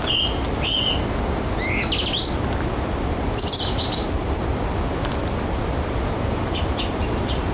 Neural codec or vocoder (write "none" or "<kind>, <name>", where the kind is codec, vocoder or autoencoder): none